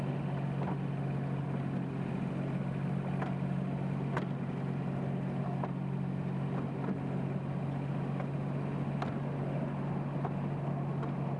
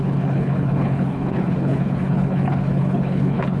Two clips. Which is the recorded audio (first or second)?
first